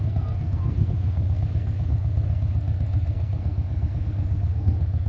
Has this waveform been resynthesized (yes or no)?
yes